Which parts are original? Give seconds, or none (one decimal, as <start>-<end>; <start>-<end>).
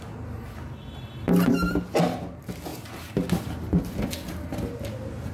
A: 0.0-5.3